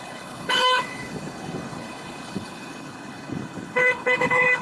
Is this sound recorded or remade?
remade